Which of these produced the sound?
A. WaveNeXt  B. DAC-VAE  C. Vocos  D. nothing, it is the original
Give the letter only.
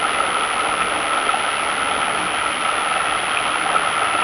D